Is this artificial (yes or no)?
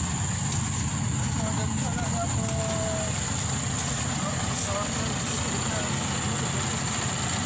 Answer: no